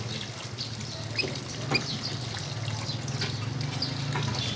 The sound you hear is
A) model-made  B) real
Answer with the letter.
B